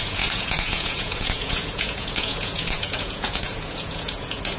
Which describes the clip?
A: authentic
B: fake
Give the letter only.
B